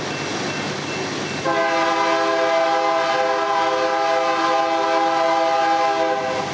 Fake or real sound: real